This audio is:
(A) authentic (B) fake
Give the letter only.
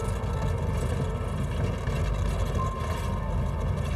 A